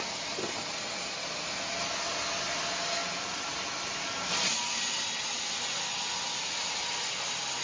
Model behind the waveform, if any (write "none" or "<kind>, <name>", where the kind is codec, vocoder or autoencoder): none